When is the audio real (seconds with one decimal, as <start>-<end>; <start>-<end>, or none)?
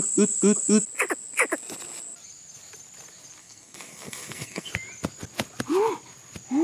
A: 0.0-3.4; 4.7-6.6